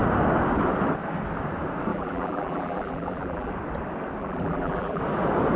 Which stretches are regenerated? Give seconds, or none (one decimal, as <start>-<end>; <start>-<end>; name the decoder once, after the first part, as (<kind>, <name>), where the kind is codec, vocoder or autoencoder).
1.9-3.5 (vocoder, BigVGAN v2); 4.2-5.0